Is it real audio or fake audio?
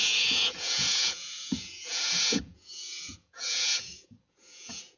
fake